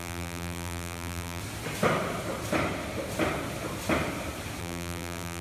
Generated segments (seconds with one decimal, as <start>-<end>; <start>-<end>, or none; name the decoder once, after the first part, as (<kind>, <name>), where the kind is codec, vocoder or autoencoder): 0.0-1.4 (vocoder, BigVGAN v2); 4.6-5.4